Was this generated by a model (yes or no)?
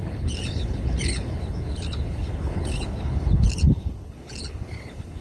yes